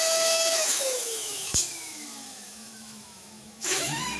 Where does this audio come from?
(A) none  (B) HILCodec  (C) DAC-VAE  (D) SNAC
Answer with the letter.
C